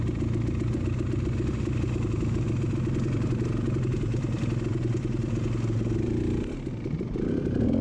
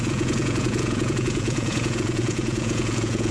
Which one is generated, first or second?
second